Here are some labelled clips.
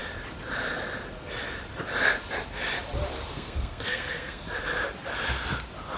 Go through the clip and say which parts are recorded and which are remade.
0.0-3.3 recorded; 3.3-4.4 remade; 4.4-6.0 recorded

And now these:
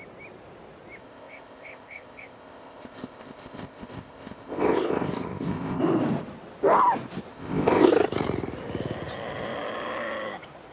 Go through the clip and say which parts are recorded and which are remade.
0.0-1.0 recorded; 1.0-5.8 remade; 5.8-7.3 recorded; 7.3-7.9 remade; 7.9-10.7 recorded

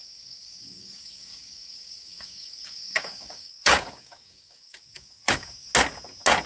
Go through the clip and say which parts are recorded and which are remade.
0.0-5.7 remade; 5.7-6.5 recorded